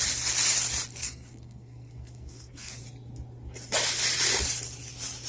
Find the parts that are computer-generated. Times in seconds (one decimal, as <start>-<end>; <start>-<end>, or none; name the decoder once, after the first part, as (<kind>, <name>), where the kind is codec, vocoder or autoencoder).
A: 1.0-2.8 (codec, SNAC)